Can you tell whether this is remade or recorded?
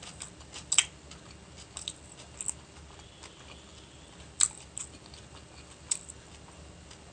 recorded